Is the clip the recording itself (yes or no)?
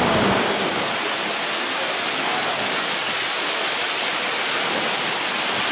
yes